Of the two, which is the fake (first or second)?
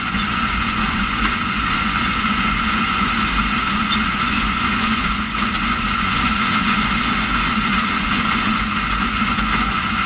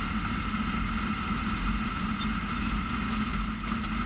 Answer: first